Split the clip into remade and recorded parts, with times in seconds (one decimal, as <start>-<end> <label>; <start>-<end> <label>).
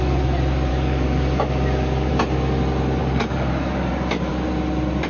0.0-0.7 recorded; 0.7-2.1 remade; 2.1-3.0 recorded; 3.0-3.9 remade; 3.9-5.1 recorded